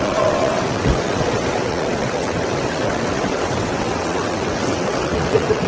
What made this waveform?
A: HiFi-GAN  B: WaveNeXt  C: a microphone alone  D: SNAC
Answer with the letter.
B